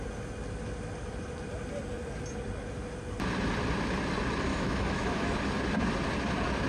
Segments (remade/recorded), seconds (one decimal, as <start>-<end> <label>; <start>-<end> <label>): 0.0-4.5 recorded; 4.5-5.4 remade; 5.4-6.7 recorded